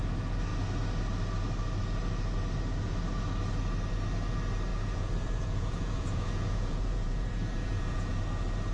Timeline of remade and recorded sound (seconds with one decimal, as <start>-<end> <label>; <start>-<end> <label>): 0.0-4.7 recorded; 4.7-8.2 remade; 8.2-8.7 recorded